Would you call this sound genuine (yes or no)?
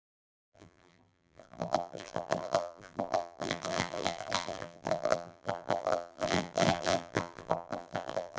no